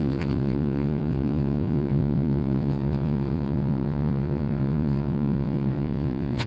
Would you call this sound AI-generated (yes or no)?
yes